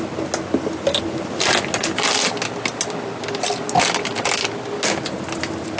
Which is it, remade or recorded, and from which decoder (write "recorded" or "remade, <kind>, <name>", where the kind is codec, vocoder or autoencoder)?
recorded